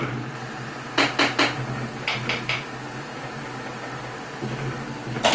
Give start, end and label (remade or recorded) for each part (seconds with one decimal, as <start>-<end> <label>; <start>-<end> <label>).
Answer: 0.0-5.3 recorded